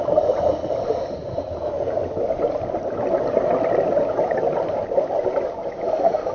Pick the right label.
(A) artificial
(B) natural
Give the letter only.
B